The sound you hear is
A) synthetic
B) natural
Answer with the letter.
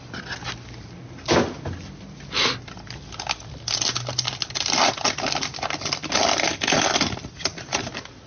B